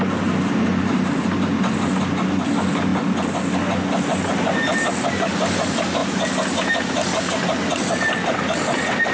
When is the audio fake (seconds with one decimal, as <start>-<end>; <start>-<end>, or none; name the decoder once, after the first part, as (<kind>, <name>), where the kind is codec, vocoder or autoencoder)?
none